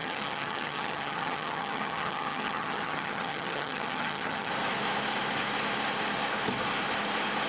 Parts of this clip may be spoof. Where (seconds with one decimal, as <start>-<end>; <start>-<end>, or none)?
0.0-4.5